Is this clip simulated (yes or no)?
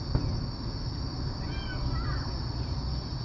no